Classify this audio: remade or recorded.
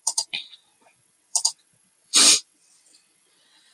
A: remade